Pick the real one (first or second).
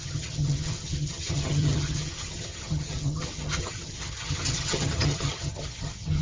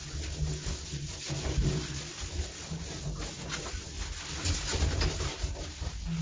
second